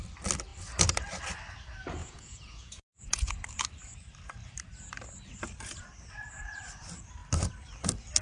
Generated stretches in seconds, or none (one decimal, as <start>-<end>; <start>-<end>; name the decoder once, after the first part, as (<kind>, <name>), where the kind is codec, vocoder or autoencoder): 2.0-3.3 (vocoder, Vocos)